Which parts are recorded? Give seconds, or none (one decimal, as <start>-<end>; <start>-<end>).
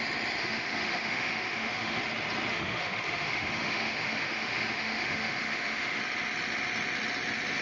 0.0-0.4; 2.0-2.5; 6.0-7.6